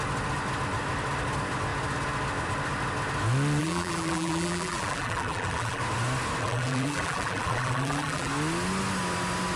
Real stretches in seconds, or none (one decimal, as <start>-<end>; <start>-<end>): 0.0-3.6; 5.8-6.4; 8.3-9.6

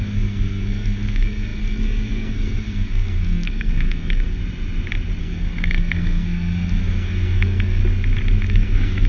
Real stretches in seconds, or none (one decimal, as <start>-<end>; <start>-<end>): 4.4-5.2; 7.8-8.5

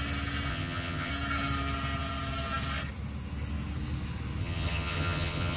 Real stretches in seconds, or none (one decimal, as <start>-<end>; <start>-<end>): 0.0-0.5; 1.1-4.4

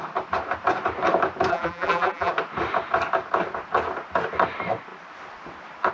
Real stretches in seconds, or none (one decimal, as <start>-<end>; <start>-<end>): 0.0-1.5; 2.3-5.9

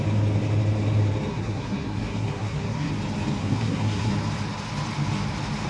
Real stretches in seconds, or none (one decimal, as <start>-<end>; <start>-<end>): 0.0-1.3; 2.9-3.4; 4.1-5.7